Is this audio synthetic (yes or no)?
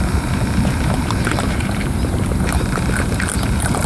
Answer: yes